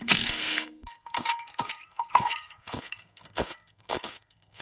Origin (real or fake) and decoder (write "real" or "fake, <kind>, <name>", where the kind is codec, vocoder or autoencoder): fake, codec, SNAC